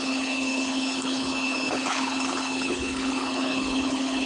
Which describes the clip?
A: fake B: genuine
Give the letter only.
A